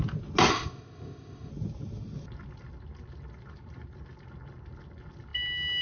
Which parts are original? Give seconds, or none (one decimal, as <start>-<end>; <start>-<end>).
0.0-0.5; 1.5-5.8